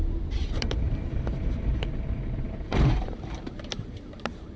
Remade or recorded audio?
remade